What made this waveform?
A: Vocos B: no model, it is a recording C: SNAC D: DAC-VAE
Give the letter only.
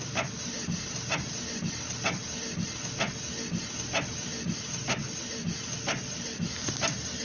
B